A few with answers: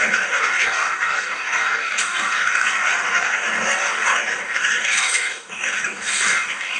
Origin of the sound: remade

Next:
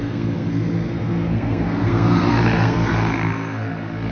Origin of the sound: remade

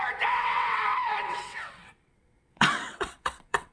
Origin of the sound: remade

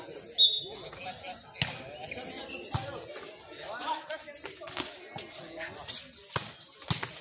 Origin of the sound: recorded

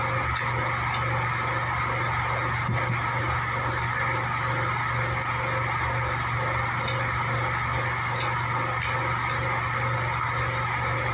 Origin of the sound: recorded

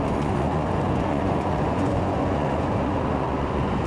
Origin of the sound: remade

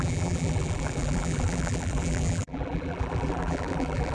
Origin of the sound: remade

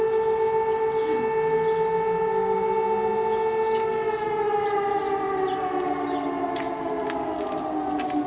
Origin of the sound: recorded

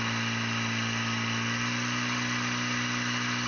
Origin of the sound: recorded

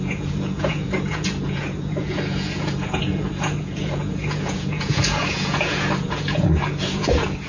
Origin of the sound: remade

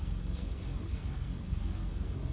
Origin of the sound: remade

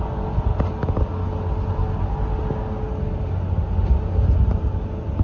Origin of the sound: recorded